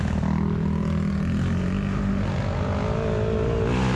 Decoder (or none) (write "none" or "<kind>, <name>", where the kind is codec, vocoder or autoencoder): none